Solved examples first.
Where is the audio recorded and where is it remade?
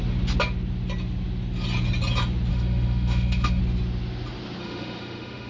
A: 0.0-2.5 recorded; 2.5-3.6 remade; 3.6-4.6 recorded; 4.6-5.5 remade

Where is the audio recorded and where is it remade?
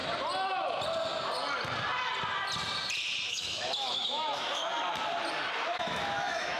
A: 0.0-3.3 recorded; 3.3-4.6 remade; 4.6-5.5 recorded; 5.5-6.6 remade